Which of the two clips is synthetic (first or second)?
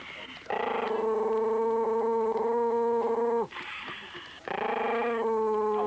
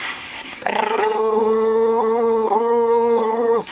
second